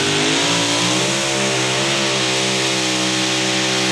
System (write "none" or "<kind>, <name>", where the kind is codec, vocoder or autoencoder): none